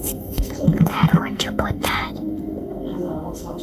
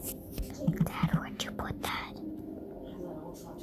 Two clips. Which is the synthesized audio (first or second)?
first